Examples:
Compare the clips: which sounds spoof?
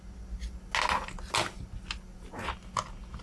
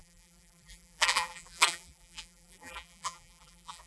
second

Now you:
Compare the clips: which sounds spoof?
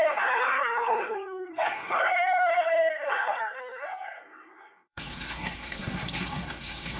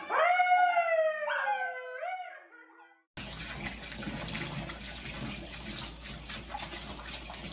first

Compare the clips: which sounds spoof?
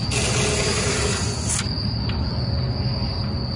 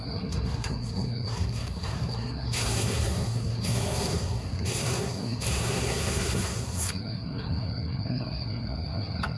second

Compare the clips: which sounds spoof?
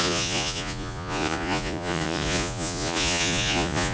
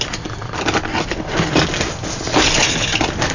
first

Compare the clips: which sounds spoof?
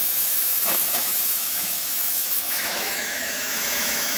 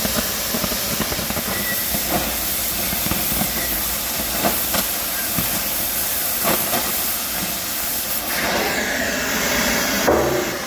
first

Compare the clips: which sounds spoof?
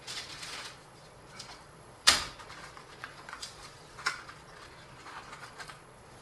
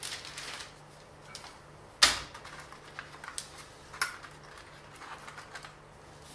first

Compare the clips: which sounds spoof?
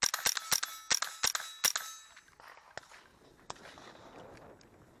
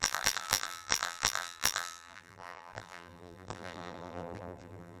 second